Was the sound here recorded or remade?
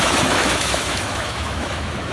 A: remade